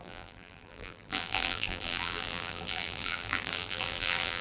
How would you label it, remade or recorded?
remade